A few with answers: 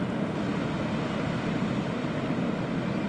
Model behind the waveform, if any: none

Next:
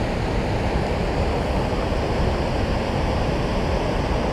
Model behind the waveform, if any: none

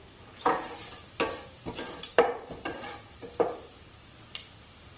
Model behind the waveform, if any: vocoder, BigVGAN v2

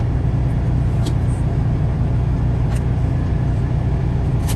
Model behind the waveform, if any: none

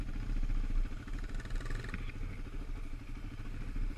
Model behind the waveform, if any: none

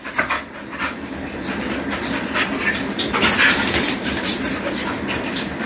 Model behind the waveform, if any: vocoder, BigVGAN v2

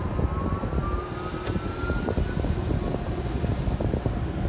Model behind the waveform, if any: none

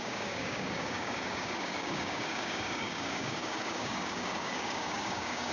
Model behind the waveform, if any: codec, DAC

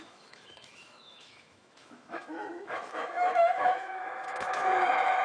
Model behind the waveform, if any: autoencoder, DAC-VAE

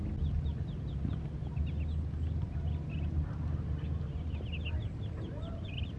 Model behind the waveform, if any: none